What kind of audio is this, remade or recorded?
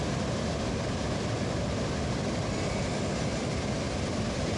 recorded